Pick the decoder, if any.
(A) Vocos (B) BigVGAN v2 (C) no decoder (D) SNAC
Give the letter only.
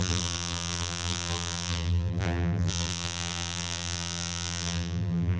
B